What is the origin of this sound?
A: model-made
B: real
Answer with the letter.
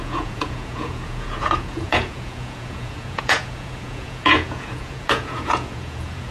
A